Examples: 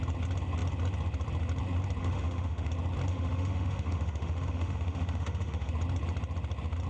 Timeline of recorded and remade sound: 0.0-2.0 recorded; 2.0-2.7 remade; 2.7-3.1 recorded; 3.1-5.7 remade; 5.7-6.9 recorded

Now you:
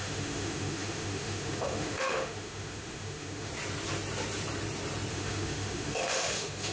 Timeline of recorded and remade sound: 0.0-3.5 remade; 3.5-5.1 recorded; 5.1-6.7 remade

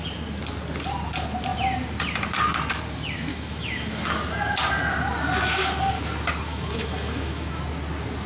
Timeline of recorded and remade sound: 0.0-3.3 recorded; 3.3-4.0 remade; 4.0-6.5 recorded; 6.5-7.6 remade; 7.6-8.3 recorded

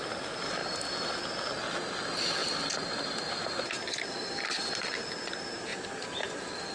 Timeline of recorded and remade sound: 0.0-6.7 recorded

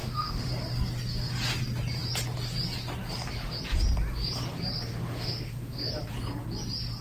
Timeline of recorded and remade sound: 0.0-0.5 remade; 0.5-4.9 recorded; 4.9-5.9 remade; 5.9-7.0 recorded